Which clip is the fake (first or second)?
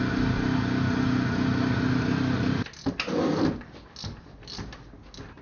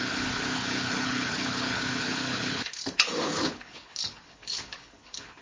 second